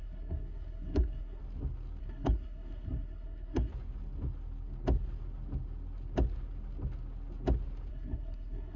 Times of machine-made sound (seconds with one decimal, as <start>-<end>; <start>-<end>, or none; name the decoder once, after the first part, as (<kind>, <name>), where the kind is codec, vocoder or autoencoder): 0.0-1.4 (codec, SNAC); 2.0-3.7; 7.9-8.8